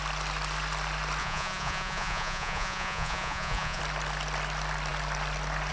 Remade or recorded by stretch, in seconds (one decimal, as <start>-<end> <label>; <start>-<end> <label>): 0.0-1.2 recorded; 1.2-3.8 remade; 3.8-5.7 recorded